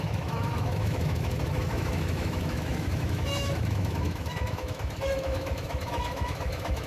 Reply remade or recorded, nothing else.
remade